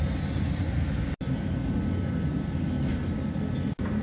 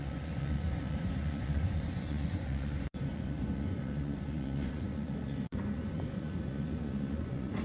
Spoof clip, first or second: second